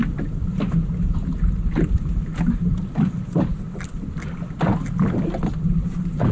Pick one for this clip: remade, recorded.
recorded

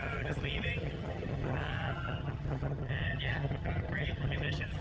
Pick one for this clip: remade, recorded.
remade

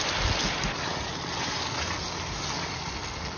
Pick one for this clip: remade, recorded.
recorded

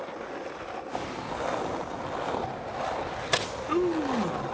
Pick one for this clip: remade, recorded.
recorded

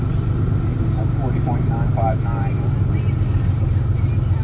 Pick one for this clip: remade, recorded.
recorded